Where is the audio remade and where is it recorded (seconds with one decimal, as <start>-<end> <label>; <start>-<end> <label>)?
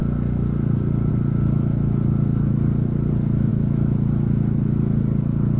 0.0-5.6 recorded